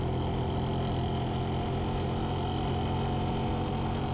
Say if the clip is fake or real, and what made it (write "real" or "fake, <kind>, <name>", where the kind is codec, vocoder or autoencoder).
real